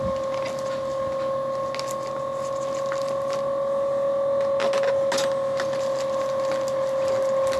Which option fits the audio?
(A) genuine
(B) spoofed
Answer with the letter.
A